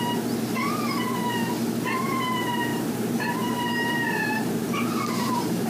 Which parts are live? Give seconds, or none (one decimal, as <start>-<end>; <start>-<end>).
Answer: 0.0-2.7